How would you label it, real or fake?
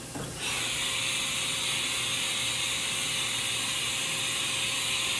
real